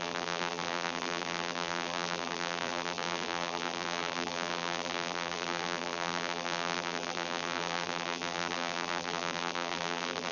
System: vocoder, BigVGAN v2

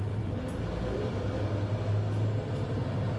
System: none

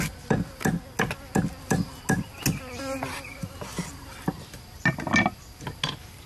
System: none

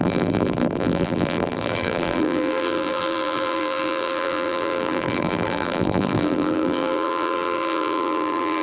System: vocoder, BigVGAN v2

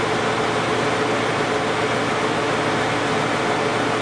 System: none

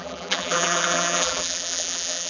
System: vocoder, BigVGAN v2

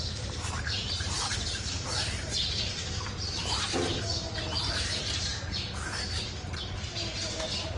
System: vocoder, BigVGAN v2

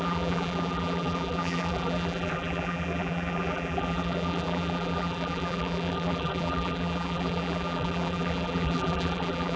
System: vocoder, BigVGAN v2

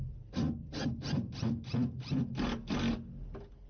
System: none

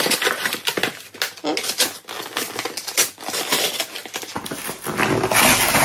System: none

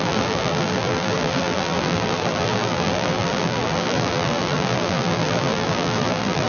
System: vocoder, BigVGAN v2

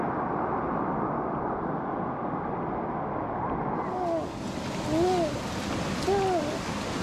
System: none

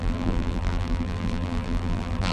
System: vocoder, BigVGAN v2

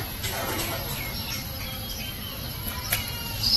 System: none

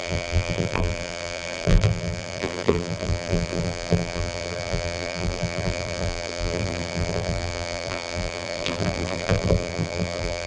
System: vocoder, BigVGAN v2